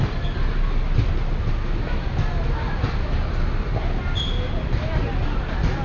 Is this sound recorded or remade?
recorded